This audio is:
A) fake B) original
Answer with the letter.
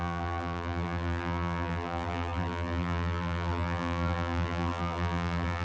A